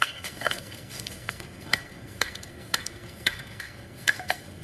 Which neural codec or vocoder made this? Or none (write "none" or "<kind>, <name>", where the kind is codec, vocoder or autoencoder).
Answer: codec, SNAC